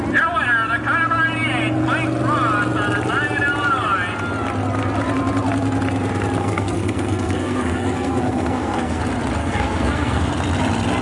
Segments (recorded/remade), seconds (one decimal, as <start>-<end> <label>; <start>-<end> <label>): 0.0-6.4 recorded; 6.4-9.0 remade; 9.0-9.4 recorded; 9.4-10.3 remade; 10.3-11.0 recorded

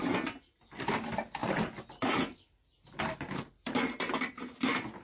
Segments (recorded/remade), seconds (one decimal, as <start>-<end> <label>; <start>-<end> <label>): 0.0-5.0 recorded

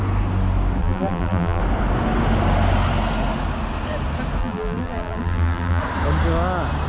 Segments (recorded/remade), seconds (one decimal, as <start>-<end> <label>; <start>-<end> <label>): 0.0-0.8 recorded; 0.8-1.6 remade; 1.6-4.4 recorded; 4.4-5.8 remade; 5.8-6.9 recorded

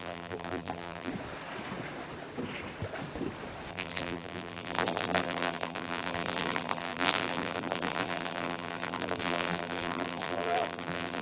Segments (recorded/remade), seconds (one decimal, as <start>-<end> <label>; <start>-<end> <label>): 0.0-1.1 remade; 1.1-3.7 recorded; 3.7-11.2 remade

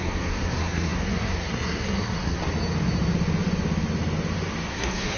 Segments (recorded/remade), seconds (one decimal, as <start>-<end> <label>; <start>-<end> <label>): 0.0-2.4 remade; 2.4-4.7 recorded; 4.7-5.2 remade